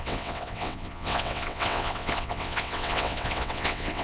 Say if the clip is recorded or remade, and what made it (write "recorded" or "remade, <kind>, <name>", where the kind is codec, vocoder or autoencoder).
remade, vocoder, WaveNeXt